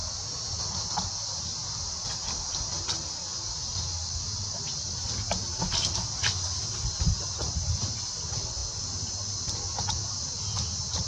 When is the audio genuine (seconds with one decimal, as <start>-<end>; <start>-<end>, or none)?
0.0-11.1

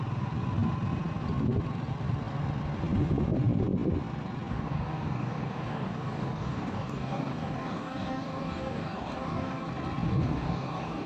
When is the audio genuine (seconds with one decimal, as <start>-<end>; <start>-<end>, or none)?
0.0-4.5; 9.7-10.1

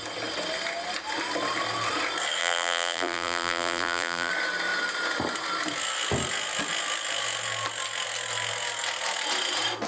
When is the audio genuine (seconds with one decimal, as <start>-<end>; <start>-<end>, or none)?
0.0-2.4; 4.3-9.9

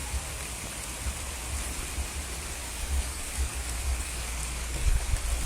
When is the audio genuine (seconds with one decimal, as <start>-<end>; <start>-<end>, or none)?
0.0-2.6; 5.0-5.5

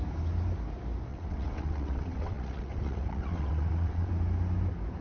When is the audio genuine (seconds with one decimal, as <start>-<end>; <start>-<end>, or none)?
0.0-1.1; 4.1-5.0

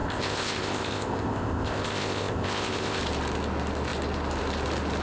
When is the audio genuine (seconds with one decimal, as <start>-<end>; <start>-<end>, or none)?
3.0-5.0

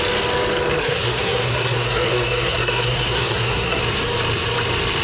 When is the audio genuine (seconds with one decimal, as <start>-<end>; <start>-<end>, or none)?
0.0-0.8; 3.8-5.0